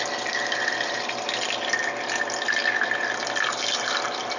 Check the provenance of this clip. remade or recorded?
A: remade